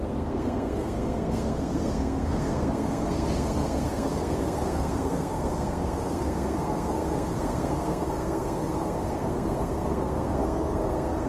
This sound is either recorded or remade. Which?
remade